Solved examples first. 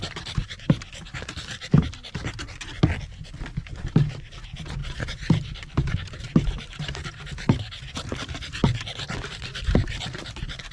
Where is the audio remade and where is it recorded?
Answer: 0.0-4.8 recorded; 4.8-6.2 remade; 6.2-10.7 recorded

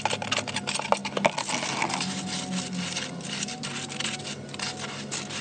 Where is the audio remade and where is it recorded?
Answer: 0.0-5.4 recorded

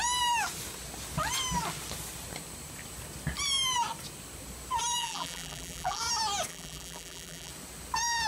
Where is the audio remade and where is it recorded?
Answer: 0.0-5.0 recorded; 5.0-6.0 remade; 6.0-6.5 recorded; 6.5-7.5 remade; 7.5-8.3 recorded